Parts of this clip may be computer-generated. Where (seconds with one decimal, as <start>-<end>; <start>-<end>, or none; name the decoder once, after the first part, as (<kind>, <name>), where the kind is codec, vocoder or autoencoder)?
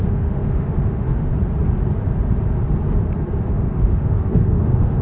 0.0-1.3 (autoencoder, DAC-VAE); 3.4-5.0